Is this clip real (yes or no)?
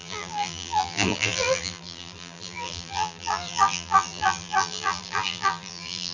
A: no